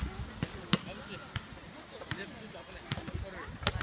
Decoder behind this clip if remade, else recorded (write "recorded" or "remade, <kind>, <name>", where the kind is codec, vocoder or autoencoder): recorded